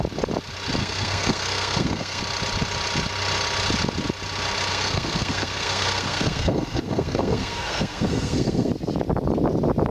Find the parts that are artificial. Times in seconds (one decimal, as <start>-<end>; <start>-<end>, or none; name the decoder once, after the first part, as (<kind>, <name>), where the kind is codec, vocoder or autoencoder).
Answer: 0.8-2.2 (codec, SNAC); 4.7-8.7